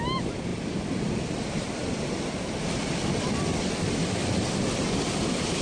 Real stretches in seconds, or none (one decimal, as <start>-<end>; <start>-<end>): 0.0-5.6